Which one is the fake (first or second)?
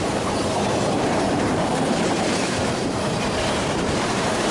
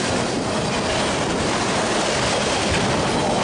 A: first